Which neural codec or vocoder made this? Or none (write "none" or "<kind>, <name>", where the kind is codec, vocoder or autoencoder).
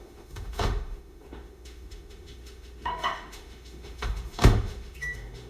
autoencoder, DAC-VAE